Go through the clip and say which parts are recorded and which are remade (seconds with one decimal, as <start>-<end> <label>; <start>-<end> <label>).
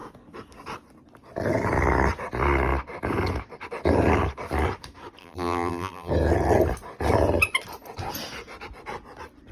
0.0-5.2 recorded; 5.2-6.1 remade; 6.1-9.5 recorded